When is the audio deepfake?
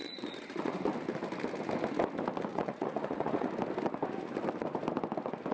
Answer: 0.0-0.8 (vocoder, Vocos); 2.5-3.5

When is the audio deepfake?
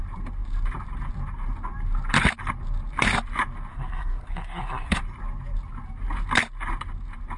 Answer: 3.7-5.0 (codec, SNAC)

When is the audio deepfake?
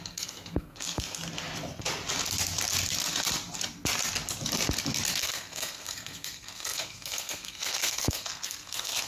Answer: 0.0-1.2 (codec, SNAC); 5.2-9.1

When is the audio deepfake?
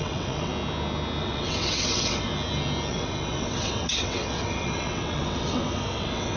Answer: 0.0-0.5 (vocoder, WaveNeXt); 1.2-2.3; 2.9-6.4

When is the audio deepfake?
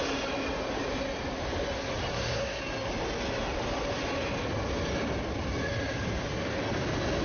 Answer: 2.1-2.6 (codec, SNAC)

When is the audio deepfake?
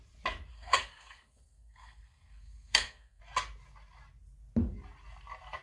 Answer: 0.5-3.2 (codec, SNAC)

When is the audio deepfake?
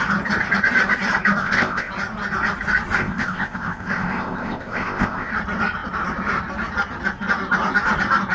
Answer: 1.4-1.9 (codec, ZipCodec); 3.0-5.3